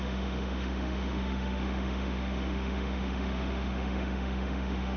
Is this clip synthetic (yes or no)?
yes